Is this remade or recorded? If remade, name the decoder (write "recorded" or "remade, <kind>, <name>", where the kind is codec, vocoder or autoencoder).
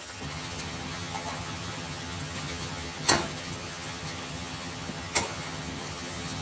remade, vocoder, HiFi-GAN